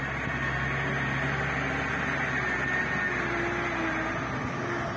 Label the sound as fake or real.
real